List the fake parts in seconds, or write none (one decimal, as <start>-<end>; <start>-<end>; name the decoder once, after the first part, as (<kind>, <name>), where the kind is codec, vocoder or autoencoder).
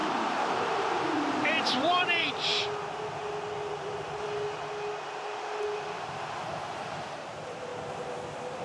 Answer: 0.0-2.5 (vocoder, BigVGAN v2); 6.8-7.7